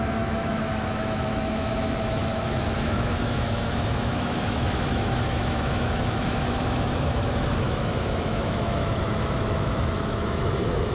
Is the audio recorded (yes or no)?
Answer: no